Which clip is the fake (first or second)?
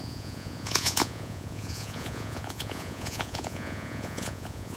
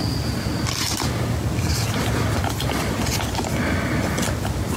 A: first